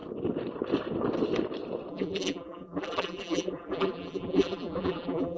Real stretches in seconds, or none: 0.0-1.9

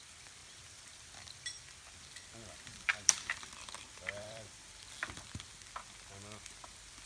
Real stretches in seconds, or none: 0.0-0.4; 1.6-2.7; 4.7-7.1

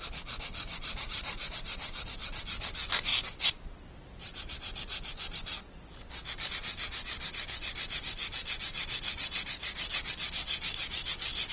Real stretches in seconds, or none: 0.0-0.7; 2.0-11.5

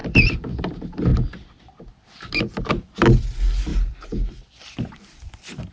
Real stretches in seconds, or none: 0.6-3.7